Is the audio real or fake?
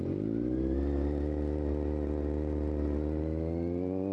real